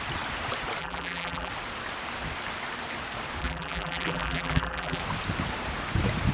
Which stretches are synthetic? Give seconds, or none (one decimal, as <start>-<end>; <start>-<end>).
0.8-1.5; 3.4-5.0

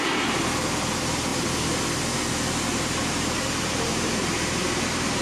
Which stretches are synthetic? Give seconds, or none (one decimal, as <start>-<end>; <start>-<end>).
2.7-5.2

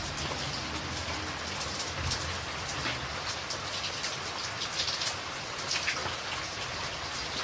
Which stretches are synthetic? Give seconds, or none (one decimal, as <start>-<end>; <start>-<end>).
none